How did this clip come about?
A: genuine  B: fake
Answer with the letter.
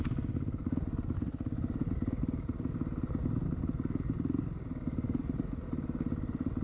A